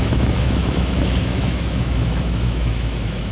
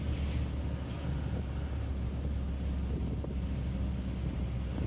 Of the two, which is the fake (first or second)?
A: first